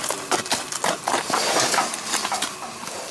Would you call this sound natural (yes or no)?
yes